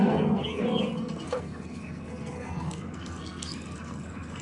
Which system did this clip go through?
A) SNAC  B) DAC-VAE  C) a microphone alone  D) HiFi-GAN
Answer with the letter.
A